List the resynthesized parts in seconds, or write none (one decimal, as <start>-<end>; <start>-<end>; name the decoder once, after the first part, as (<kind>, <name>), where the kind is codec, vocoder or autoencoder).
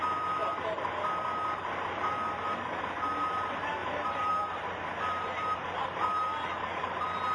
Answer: 3.8-4.3 (vocoder, BigVGAN v2)